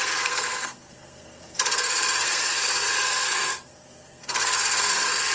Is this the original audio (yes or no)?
no